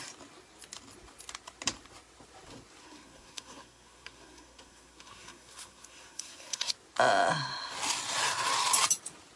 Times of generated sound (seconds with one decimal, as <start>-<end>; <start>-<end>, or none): 2.8-6.7